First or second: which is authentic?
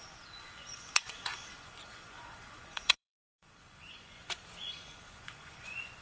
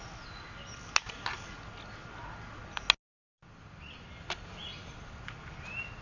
second